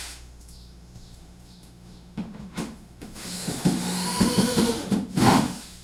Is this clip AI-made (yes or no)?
yes